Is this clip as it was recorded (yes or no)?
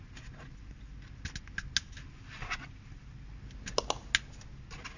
yes